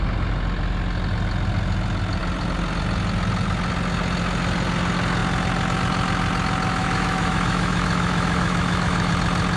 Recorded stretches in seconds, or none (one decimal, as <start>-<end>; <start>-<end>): 0.0-6.8; 9.1-9.6